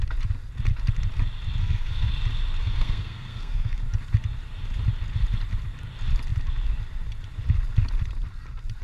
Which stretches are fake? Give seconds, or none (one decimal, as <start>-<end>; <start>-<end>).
1.6-2.1; 2.6-3.8